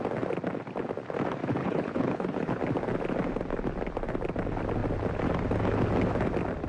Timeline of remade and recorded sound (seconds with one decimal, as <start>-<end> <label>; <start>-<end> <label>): 0.0-1.6 recorded; 1.6-2.6 remade; 2.6-6.7 recorded